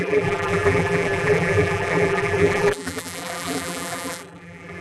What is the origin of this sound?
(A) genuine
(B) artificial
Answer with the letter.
B